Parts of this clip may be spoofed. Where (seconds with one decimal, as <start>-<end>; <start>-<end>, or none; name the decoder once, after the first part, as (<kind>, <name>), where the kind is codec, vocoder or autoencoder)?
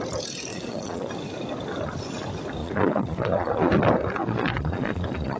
0.5-1.1 (vocoder, Vocos); 2.6-3.7; 4.2-5.4